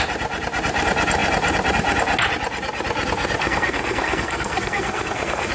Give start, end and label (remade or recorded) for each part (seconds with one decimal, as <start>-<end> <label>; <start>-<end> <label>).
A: 0.0-3.4 recorded; 3.4-5.5 remade